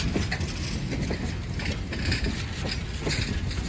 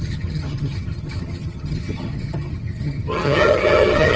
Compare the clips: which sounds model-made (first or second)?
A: second